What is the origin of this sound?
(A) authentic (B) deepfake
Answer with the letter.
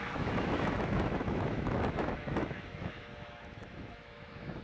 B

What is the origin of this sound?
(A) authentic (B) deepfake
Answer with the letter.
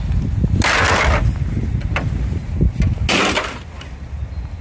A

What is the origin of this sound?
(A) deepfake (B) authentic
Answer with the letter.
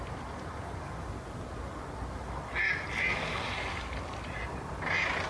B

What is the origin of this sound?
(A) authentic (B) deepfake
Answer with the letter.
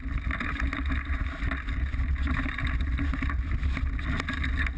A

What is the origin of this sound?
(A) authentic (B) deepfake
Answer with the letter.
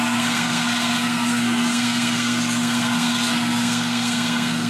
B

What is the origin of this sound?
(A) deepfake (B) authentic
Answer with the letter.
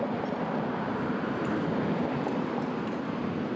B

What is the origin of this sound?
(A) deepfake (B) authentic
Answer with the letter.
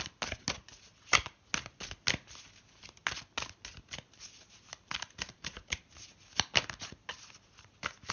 B